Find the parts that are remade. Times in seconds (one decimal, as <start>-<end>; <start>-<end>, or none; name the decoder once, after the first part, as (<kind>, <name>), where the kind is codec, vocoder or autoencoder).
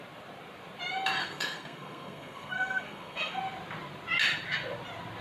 1.2-3.4 (codec, SNAC)